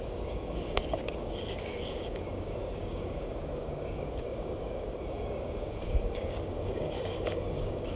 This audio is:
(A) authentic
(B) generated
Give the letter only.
B